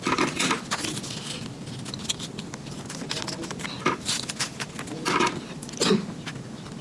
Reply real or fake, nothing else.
real